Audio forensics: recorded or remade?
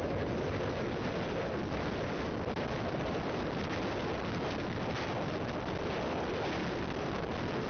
recorded